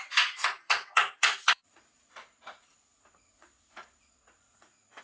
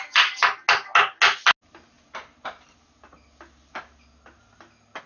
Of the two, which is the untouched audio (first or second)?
second